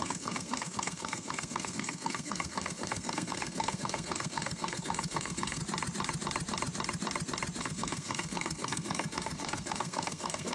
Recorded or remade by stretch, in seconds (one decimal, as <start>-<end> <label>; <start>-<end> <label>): 0.0-5.6 remade; 5.6-7.6 recorded; 7.6-10.5 remade